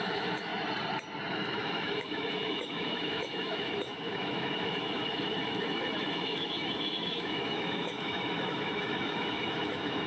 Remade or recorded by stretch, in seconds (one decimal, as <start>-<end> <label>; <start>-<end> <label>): 0.0-0.5 remade; 0.5-1.3 recorded; 1.3-10.1 remade